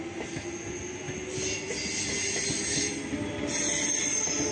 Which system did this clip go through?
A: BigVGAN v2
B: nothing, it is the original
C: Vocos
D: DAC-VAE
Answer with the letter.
B